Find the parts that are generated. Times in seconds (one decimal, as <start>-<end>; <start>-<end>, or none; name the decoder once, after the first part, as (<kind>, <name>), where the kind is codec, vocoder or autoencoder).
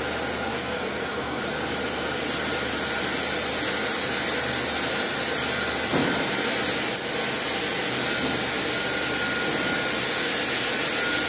0.5-1.4 (codec, SNAC)